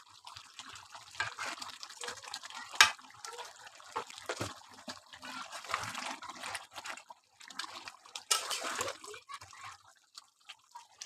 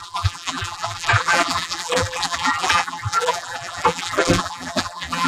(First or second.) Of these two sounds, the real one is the first